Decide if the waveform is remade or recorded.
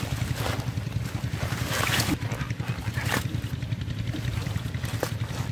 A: recorded